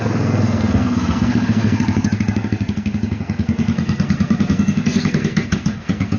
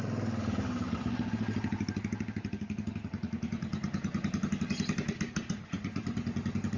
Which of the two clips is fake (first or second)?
first